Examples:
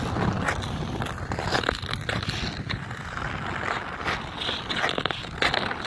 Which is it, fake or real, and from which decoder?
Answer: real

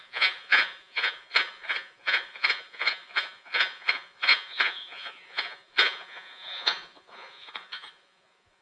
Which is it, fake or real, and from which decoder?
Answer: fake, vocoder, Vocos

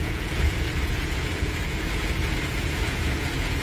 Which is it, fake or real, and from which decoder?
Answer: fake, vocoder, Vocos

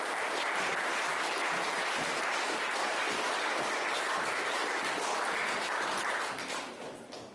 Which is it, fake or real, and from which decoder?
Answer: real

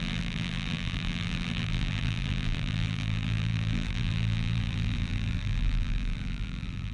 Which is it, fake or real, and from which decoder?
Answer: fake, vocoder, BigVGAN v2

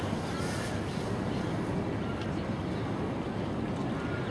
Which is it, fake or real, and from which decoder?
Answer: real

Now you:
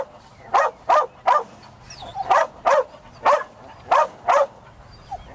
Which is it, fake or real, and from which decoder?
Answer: real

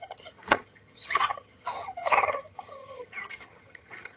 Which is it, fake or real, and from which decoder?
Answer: fake, vocoder, HiFi-GAN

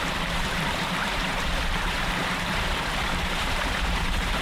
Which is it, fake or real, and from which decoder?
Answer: fake, vocoder, BigVGAN v2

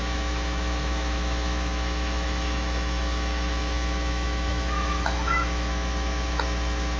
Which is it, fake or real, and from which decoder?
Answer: fake, autoencoder, DAC-VAE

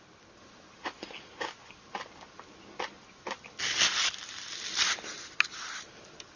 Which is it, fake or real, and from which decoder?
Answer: real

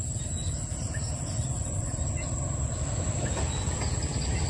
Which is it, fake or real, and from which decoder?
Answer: real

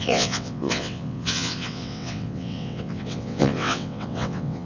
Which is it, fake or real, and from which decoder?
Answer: fake, vocoder, WaveNeXt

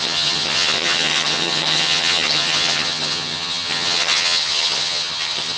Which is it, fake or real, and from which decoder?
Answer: fake, vocoder, HiFi-GAN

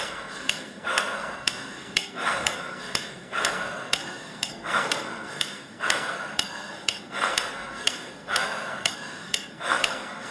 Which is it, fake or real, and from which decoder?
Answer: fake, codec, SNAC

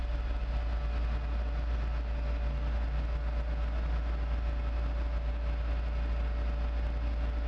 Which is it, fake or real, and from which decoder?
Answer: real